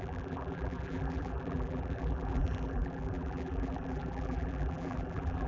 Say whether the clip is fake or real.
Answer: fake